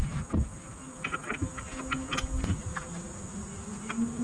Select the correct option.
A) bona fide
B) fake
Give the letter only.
A